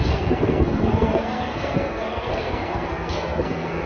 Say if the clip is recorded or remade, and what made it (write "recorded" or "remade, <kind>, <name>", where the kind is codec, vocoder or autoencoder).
remade, codec, SNAC